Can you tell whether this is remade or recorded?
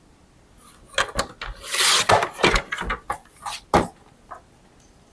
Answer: recorded